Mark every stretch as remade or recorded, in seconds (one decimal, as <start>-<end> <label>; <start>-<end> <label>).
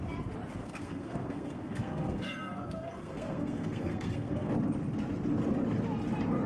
0.0-0.6 recorded; 0.6-4.5 remade; 4.5-6.5 recorded